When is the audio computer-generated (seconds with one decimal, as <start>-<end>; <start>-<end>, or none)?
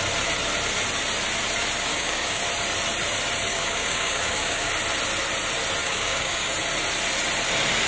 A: 1.9-2.4; 3.5-4.7; 5.8-6.5